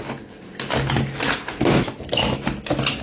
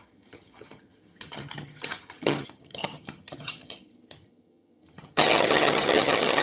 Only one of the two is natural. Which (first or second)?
first